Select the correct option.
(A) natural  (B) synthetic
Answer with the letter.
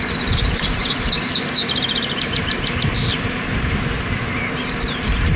B